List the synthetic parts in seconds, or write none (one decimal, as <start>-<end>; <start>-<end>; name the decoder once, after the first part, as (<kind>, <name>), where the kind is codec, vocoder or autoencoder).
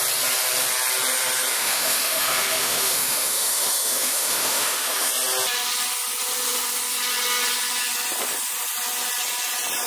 1.5-5.1 (autoencoder, DAC-VAE)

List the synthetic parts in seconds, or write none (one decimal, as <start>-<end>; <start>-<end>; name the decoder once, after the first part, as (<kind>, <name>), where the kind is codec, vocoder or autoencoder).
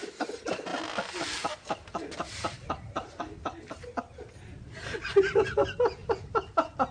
none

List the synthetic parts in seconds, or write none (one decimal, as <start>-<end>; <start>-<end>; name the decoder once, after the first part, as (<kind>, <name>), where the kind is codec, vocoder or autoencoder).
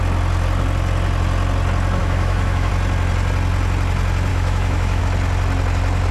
2.0-2.7 (autoencoder, DAC-VAE); 4.3-5.0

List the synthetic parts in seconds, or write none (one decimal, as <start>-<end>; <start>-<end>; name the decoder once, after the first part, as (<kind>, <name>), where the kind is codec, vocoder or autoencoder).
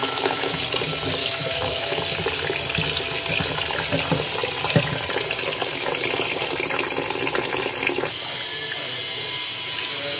0.0-0.6 (autoencoder, DAC-VAE); 1.2-2.0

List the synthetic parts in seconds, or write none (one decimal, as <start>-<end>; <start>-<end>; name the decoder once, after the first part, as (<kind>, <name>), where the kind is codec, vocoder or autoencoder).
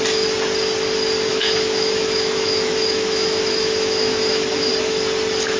1.3-4.7 (autoencoder, DAC-VAE)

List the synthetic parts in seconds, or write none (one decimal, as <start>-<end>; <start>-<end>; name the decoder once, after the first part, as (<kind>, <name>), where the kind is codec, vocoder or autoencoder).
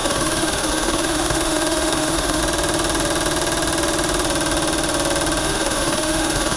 0.0-2.4 (autoencoder, DAC-VAE); 5.4-6.6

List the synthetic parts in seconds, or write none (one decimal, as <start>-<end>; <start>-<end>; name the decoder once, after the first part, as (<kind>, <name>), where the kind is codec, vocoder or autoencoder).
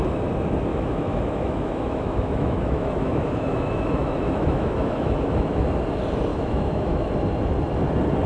0.7-5.6 (autoencoder, DAC-VAE); 6.3-7.1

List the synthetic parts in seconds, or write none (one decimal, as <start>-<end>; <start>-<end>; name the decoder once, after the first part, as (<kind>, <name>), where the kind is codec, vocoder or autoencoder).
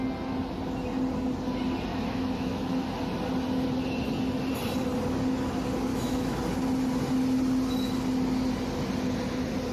1.9-2.7 (autoencoder, DAC-VAE); 5.9-6.4